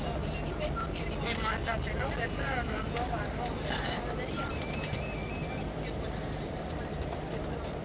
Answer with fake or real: fake